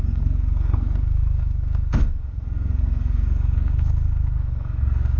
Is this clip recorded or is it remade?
remade